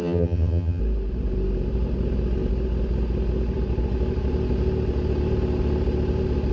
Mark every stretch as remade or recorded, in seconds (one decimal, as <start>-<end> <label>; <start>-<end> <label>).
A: 0.0-0.8 remade; 0.8-6.5 recorded